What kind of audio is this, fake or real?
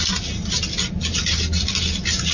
real